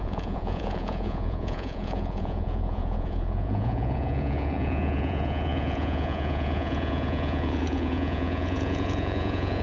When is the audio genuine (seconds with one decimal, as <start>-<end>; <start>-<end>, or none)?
none